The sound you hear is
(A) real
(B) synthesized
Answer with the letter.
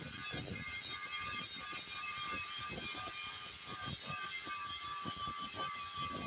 A